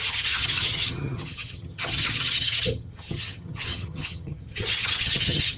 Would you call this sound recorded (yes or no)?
no